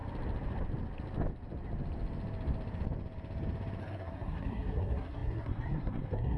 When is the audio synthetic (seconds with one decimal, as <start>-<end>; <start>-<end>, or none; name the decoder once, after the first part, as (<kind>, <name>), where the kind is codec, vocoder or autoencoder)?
3.8-6.4 (codec, SNAC)